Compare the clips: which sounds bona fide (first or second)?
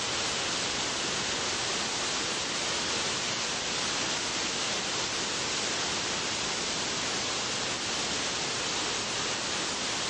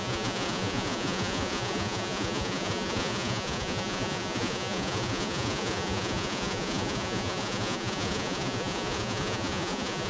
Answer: first